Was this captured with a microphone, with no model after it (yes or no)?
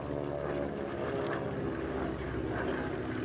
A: yes